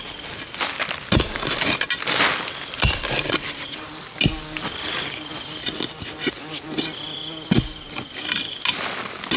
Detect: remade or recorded recorded